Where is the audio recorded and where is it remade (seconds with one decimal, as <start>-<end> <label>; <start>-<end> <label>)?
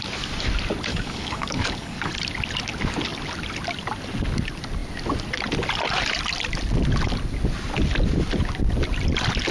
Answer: 0.0-0.9 recorded; 0.9-2.1 remade; 2.1-9.5 recorded